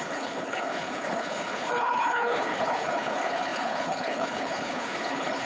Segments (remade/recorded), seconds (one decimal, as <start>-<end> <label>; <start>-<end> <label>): 0.0-5.5 remade